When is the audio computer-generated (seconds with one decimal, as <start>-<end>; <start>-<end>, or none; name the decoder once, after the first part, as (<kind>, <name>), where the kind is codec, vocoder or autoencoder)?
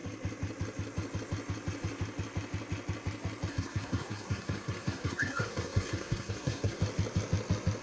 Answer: 3.5-6.8 (codec, SNAC)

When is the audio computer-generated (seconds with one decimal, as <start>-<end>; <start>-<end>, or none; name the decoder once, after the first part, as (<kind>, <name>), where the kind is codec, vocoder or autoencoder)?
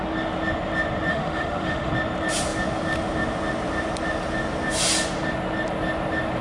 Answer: 1.1-1.9 (autoencoder, DAC-VAE)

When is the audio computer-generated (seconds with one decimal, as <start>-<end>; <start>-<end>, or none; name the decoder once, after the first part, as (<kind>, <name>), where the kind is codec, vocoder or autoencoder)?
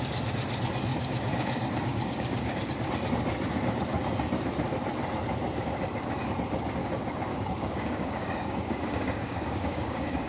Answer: 0.9-2.7 (codec, DAC); 6.8-10.3